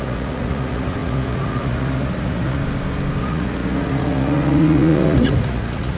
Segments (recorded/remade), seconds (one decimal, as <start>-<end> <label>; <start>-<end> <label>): 0.0-2.6 remade; 2.6-3.2 recorded; 3.2-6.0 remade